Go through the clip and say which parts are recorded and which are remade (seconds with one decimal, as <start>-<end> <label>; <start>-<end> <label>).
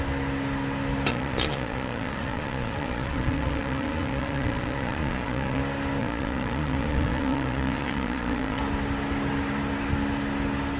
0.0-1.1 recorded; 1.1-5.6 remade; 5.6-6.0 recorded; 6.0-8.6 remade; 8.6-10.8 recorded